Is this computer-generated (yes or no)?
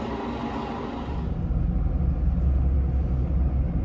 no